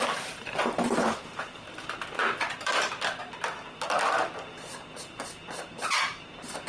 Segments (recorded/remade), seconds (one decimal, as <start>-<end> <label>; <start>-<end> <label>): 0.0-2.2 remade; 2.2-5.0 recorded; 5.0-6.7 remade